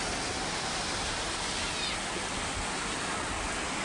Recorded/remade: recorded